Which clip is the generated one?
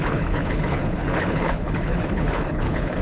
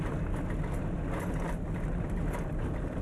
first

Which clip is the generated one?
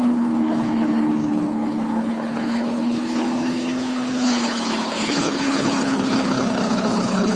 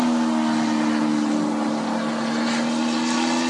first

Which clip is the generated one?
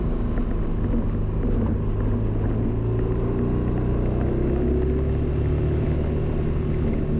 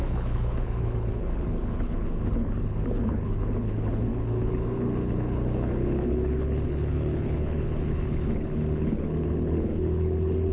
second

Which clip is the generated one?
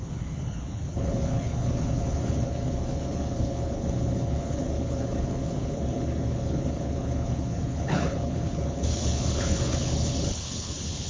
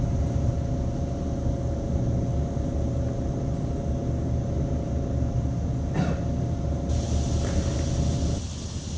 first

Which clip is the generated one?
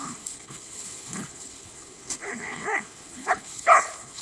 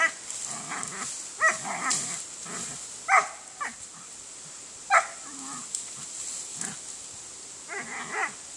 first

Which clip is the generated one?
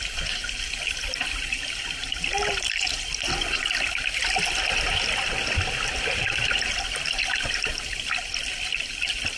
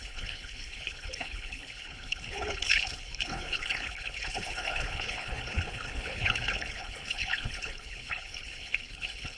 second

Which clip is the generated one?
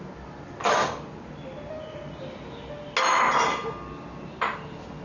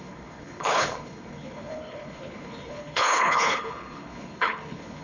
second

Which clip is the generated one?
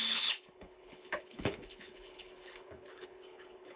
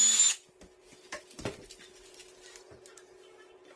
first